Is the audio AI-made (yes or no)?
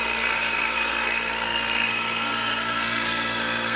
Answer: yes